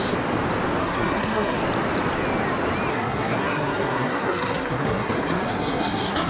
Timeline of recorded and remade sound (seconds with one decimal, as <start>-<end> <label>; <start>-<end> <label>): 0.0-0.8 recorded; 0.8-1.6 remade; 1.6-2.9 recorded; 2.9-6.3 remade